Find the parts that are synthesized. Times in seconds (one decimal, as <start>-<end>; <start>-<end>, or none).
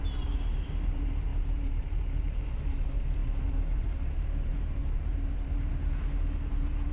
0.0-5.7; 6.5-6.9